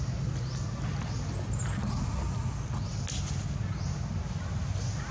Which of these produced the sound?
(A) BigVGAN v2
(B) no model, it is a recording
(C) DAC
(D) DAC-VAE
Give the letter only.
B